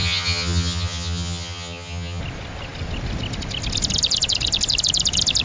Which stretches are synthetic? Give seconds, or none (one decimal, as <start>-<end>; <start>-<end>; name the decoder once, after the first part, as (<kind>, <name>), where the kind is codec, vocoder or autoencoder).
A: 0.0-2.2 (vocoder, HiFi-GAN)

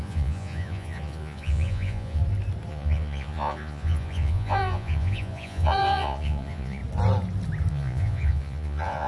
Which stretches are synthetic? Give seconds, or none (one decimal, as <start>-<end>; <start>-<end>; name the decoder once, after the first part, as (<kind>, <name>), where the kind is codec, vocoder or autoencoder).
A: 0.0-2.2 (vocoder, Vocos); 2.7-6.8; 7.7-9.1

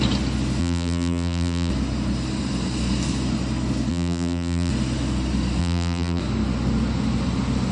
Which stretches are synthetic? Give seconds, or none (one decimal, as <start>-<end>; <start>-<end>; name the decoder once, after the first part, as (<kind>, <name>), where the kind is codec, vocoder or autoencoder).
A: 0.6-1.7 (vocoder, BigVGAN v2); 3.9-4.7; 5.6-6.2

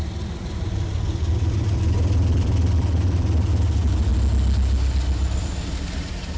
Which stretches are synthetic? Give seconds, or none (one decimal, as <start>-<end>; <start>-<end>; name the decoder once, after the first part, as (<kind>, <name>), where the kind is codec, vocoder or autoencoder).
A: 0.0-4.1 (vocoder, BigVGAN v2); 5.4-6.4

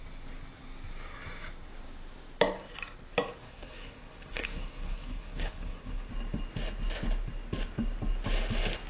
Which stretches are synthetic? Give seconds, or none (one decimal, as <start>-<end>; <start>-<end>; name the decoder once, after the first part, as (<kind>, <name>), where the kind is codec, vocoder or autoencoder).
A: 3.4-6.1 (codec, SNAC)

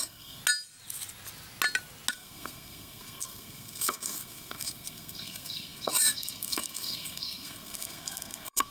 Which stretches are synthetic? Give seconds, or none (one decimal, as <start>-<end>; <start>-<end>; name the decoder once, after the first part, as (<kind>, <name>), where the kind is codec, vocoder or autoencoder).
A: 0.0-0.4 (codec, SNAC); 2.1-8.7

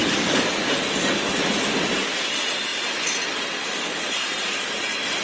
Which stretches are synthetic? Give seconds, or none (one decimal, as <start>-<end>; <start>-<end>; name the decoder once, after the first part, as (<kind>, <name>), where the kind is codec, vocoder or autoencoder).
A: none

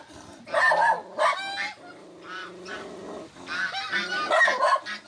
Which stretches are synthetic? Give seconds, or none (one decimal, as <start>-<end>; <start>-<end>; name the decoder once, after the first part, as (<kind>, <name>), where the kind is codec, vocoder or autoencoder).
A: none